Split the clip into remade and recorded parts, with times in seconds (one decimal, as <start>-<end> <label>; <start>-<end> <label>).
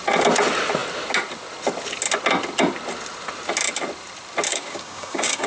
0.0-4.5 recorded; 4.5-5.5 remade